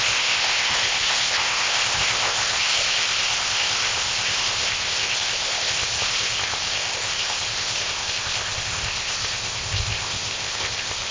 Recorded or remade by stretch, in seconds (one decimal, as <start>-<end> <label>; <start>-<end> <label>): 0.0-11.1 remade